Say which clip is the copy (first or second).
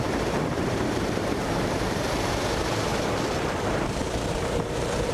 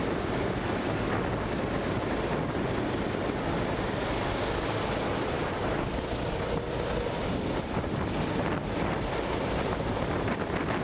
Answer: first